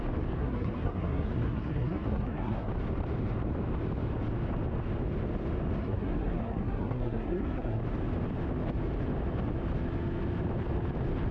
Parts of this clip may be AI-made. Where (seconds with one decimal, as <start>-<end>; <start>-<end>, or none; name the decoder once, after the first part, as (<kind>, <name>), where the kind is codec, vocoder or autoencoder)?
0.4-2.7 (codec, SNAC); 5.8-7.8